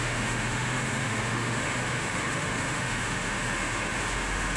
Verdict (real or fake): fake